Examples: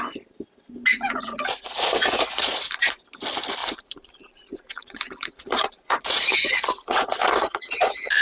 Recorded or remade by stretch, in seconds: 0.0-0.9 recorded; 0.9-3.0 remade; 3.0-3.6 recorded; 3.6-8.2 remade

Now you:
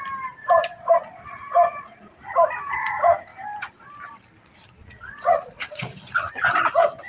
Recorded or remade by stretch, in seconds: 0.0-0.4 recorded; 0.4-1.2 remade; 1.2-4.8 recorded; 4.8-6.3 remade; 6.3-7.1 recorded